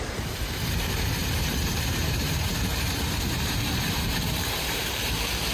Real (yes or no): no